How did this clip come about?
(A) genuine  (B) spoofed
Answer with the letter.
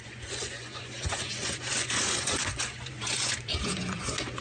B